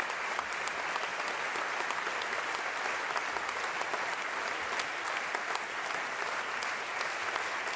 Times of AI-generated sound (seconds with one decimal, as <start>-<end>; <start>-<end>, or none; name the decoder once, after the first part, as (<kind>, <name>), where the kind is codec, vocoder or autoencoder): none